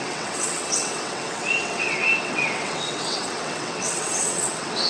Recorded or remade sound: remade